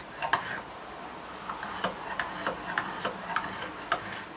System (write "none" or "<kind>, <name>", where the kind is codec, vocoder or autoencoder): none